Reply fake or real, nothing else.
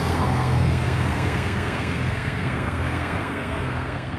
fake